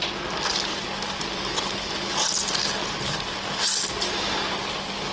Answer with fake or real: real